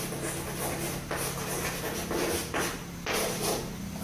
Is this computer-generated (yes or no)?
no